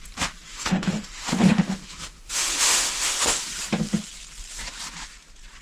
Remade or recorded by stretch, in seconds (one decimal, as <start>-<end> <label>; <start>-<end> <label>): 0.0-0.5 recorded; 0.5-3.4 remade; 3.4-5.6 recorded